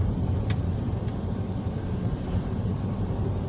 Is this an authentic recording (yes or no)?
no